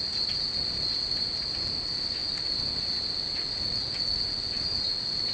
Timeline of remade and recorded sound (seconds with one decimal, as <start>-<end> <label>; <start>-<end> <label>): 0.0-5.3 recorded